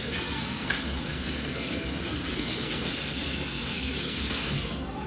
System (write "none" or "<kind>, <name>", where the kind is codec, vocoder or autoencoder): codec, SNAC